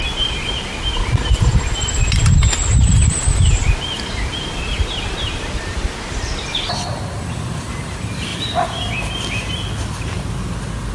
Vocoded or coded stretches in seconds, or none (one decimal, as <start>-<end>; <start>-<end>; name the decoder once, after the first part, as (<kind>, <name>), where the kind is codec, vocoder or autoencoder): 0.0-8.3 (vocoder, BigVGAN v2)

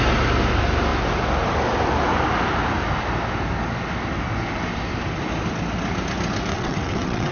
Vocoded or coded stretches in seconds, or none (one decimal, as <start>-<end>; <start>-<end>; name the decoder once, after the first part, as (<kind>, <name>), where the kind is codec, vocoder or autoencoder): 6.5-7.3 (vocoder, WaveNeXt)

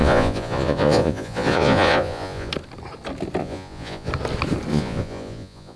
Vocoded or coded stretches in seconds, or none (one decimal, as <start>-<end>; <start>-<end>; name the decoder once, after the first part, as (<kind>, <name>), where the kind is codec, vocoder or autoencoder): 0.0-2.5 (vocoder, Vocos); 3.4-4.1; 4.7-5.8

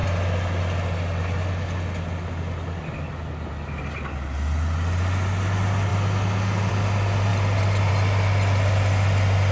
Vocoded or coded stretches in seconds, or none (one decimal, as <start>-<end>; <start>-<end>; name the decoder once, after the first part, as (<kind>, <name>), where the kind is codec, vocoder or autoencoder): none

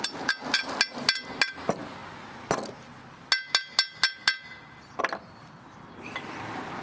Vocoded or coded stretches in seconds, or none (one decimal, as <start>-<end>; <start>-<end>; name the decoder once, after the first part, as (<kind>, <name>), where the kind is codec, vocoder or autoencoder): none

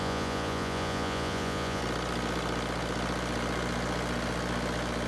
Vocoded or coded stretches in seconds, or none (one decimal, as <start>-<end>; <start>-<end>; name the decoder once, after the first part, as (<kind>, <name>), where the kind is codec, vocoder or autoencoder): 0.0-1.8 (vocoder, Vocos)

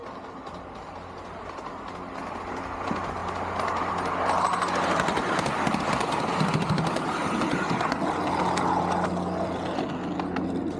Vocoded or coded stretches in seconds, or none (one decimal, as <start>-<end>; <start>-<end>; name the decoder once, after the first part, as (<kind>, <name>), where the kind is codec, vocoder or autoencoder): none

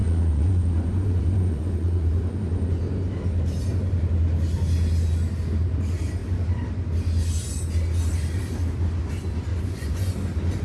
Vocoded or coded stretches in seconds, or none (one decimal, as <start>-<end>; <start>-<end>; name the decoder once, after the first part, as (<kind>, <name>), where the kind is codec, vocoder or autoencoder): 0.0-2.7 (vocoder, Vocos); 9.5-10.1